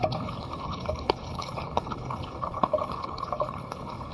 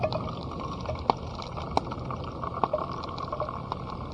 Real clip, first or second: second